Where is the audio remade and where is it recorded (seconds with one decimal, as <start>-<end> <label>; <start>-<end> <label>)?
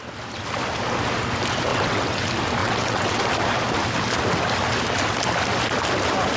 0.0-1.7 recorded; 1.7-2.2 remade; 2.2-2.6 recorded; 2.6-3.2 remade; 3.2-6.4 recorded